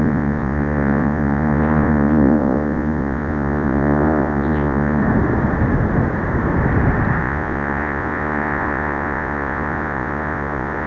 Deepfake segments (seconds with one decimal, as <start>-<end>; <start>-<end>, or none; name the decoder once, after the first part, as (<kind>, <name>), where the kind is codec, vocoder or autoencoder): 0.0-5.0 (vocoder, Vocos); 7.2-10.9